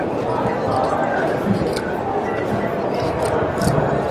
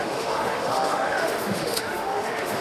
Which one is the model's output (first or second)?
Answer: second